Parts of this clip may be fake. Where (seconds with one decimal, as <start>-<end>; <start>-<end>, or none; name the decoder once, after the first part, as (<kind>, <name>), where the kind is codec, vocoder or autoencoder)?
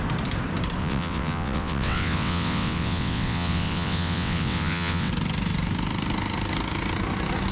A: 0.8-5.1 (vocoder, WaveNeXt)